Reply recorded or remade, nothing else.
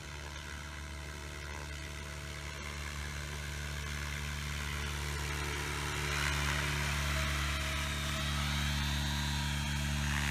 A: recorded